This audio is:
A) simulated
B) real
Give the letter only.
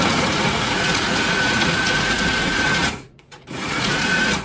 A